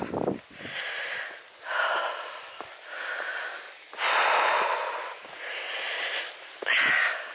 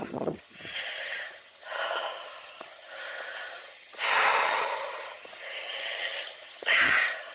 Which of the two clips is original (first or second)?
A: first